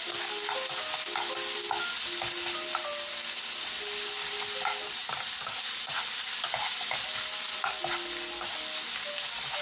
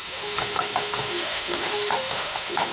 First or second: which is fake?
second